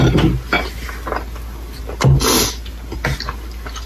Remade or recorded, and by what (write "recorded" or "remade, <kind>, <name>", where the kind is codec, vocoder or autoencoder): recorded